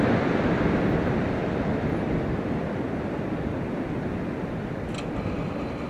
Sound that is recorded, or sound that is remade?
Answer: recorded